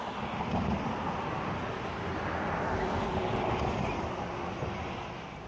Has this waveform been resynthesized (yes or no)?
no